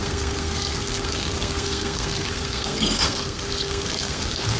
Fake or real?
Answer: fake